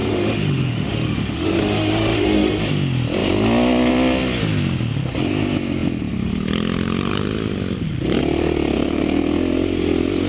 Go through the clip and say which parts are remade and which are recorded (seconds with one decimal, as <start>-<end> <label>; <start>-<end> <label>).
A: 0.0-2.6 remade; 2.6-10.3 recorded